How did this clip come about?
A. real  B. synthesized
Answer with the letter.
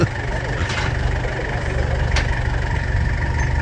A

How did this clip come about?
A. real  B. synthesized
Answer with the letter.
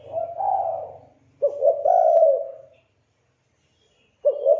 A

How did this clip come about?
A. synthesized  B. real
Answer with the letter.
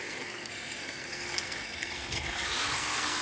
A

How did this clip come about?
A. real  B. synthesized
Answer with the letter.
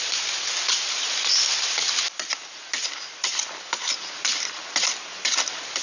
B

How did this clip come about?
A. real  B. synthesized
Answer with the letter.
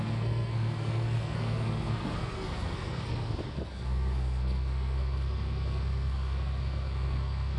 B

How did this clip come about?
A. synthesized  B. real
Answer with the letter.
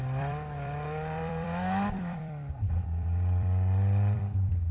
A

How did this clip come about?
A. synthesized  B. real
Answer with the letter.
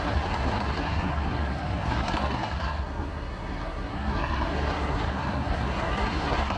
A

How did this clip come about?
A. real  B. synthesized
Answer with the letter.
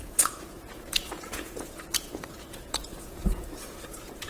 B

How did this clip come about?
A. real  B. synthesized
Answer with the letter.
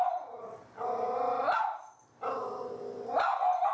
A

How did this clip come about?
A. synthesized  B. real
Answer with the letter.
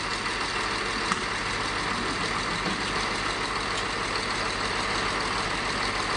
B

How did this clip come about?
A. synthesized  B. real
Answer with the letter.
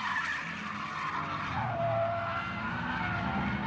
B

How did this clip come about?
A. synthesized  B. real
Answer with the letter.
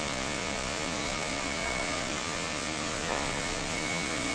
A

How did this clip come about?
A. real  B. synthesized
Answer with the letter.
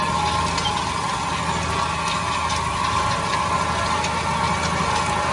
A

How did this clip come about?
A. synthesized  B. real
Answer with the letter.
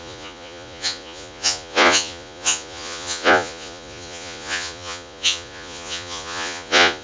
A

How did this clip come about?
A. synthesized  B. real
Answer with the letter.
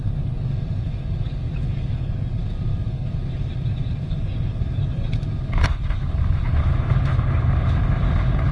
B